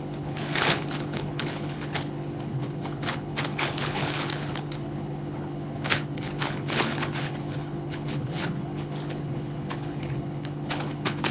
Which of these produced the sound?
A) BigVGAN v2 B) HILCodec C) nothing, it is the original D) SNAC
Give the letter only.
B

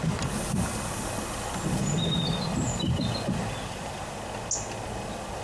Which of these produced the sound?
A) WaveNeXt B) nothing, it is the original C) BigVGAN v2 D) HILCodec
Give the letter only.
B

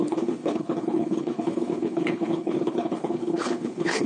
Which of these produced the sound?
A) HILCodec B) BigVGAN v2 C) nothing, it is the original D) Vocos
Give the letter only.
A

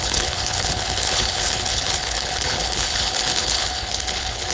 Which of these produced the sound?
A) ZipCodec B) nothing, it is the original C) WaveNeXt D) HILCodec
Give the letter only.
D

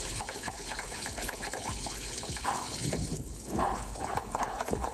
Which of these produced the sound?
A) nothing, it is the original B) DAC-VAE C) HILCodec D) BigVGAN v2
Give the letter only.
C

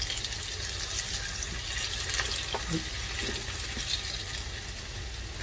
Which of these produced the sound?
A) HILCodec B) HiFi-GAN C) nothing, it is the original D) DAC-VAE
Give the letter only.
C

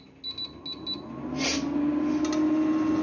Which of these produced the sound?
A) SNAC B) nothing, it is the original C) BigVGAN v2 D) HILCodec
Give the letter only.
B